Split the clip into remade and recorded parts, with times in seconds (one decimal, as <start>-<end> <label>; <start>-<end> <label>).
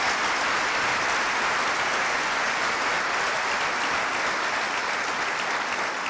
0.0-2.1 recorded; 2.1-2.7 remade; 2.7-6.1 recorded